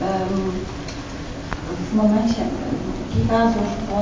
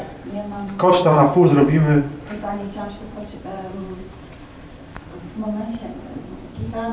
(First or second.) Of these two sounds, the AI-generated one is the second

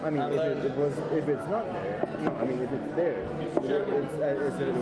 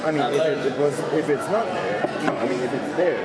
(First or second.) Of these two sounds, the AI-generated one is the second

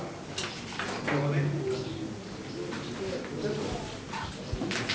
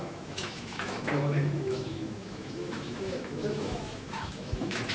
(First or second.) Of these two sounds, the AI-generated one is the second